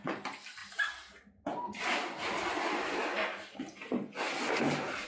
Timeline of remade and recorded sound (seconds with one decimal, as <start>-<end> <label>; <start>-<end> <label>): 0.0-5.1 recorded